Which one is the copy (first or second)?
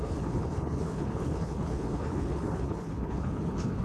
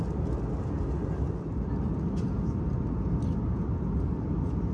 first